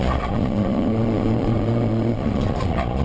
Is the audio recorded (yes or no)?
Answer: no